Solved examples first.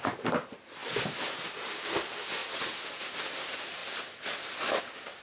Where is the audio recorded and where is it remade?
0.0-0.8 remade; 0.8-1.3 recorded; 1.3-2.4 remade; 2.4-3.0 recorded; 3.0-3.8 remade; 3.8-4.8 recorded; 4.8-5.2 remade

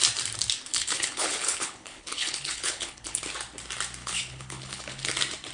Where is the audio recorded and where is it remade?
0.0-0.7 recorded; 0.7-3.2 remade; 3.2-4.0 recorded; 4.0-5.1 remade; 5.1-5.5 recorded

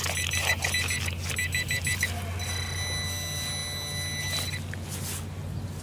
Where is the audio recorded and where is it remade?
0.0-5.8 recorded

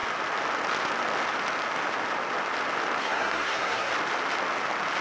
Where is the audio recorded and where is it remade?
0.0-3.0 recorded; 3.0-3.9 remade; 3.9-5.0 recorded

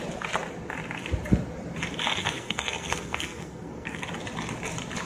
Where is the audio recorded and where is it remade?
0.0-2.2 recorded; 2.2-4.0 remade; 4.0-5.1 recorded

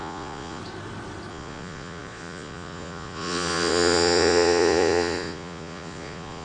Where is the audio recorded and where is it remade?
0.0-0.6 remade; 0.6-1.3 recorded; 1.3-6.4 remade

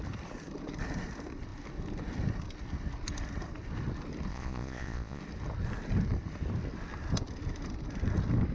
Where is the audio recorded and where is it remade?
0.0-4.3 recorded; 4.3-5.2 remade; 5.2-8.5 recorded